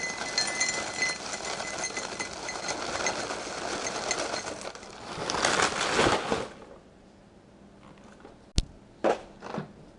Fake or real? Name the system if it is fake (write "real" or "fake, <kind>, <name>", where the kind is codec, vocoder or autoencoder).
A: real